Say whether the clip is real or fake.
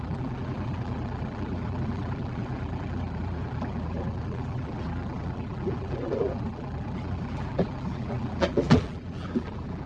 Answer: fake